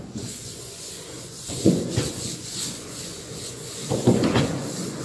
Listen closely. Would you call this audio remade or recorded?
remade